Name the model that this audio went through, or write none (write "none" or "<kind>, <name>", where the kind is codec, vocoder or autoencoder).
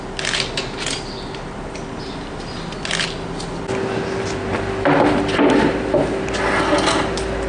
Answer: none